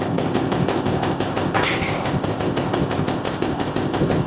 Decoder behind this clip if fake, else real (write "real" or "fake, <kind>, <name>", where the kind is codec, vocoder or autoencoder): fake, codec, ZipCodec